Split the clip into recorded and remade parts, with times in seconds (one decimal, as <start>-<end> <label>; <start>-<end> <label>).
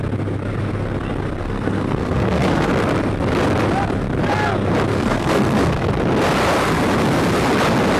0.0-1.4 recorded; 1.4-2.7 remade; 2.7-4.9 recorded; 4.9-5.9 remade; 5.9-8.0 recorded